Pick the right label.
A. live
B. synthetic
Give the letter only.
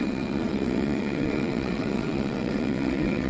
B